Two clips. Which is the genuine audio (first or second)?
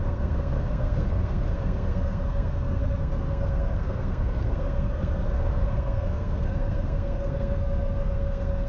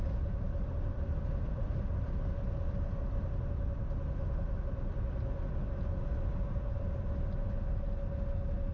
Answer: second